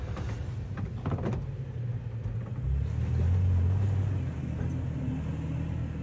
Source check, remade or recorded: recorded